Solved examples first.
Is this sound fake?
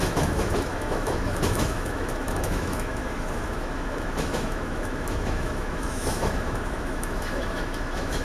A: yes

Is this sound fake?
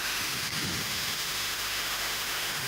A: yes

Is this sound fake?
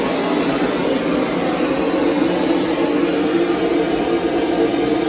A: no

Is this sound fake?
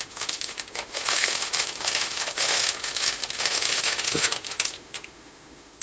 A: yes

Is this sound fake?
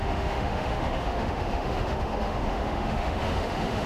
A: yes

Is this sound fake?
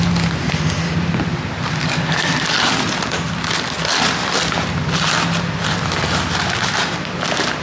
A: no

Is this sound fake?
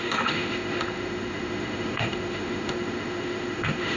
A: yes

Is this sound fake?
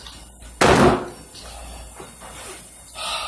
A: no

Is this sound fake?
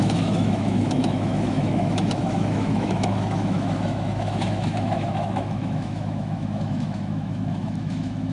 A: yes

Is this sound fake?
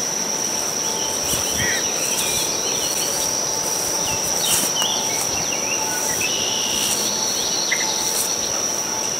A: no